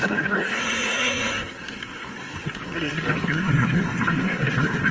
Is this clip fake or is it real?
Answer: fake